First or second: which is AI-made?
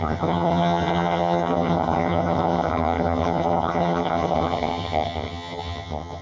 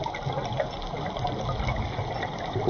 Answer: first